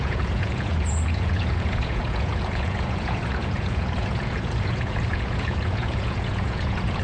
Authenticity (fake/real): fake